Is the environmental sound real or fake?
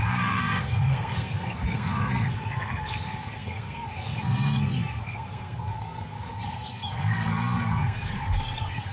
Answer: fake